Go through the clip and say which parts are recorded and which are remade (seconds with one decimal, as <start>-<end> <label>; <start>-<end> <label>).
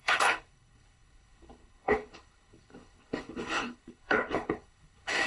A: 0.0-5.3 remade